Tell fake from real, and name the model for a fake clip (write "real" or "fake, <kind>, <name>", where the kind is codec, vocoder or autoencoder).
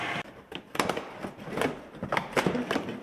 real